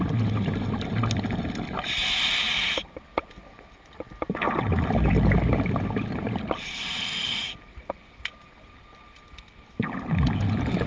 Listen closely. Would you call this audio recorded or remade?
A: recorded